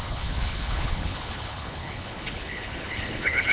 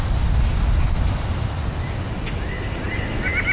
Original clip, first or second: second